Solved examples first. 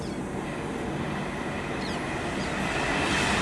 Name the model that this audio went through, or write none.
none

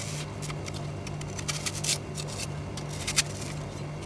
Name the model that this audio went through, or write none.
none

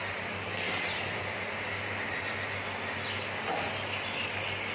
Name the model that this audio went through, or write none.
none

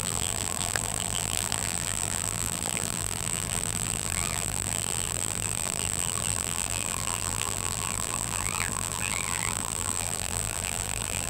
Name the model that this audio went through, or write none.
vocoder, BigVGAN v2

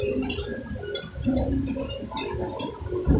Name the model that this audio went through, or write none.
none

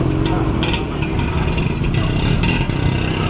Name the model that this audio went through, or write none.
none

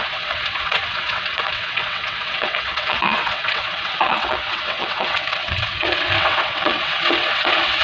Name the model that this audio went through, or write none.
vocoder, WaveNeXt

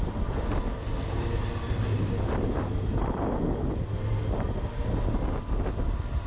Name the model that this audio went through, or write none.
none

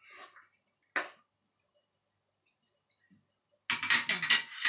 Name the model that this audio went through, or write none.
none